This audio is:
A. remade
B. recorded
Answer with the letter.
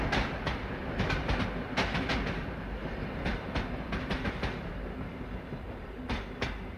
B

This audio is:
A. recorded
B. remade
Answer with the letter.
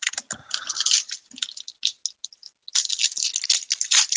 A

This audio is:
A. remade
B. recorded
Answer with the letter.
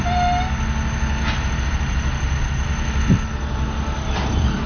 B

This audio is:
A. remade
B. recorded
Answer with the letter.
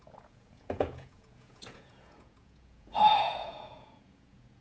A